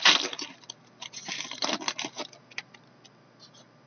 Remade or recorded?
recorded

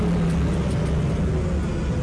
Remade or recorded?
recorded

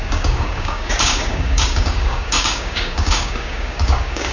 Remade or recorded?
remade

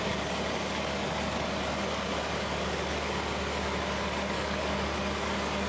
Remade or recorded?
remade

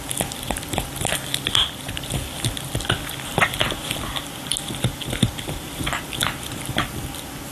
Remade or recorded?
recorded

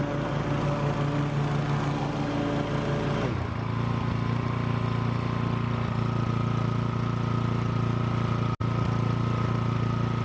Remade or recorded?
recorded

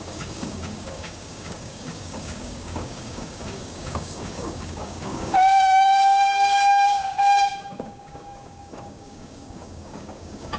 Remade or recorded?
remade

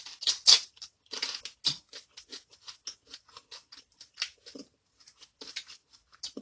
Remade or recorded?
recorded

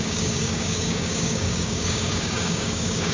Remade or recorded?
remade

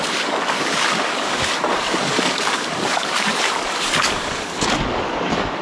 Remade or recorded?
remade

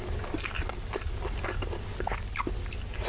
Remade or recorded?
recorded